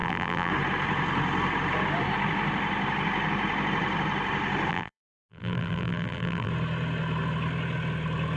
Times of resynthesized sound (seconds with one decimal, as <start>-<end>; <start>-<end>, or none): 0.0-0.5; 4.7-6.5